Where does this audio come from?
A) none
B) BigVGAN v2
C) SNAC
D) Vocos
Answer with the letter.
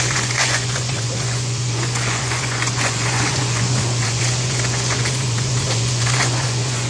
D